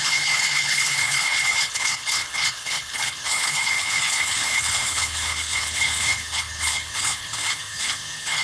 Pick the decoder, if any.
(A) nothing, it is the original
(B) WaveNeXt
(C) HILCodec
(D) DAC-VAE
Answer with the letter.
C